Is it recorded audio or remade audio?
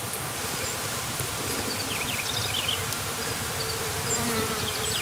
recorded